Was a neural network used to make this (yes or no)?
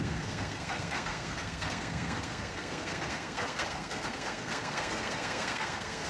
yes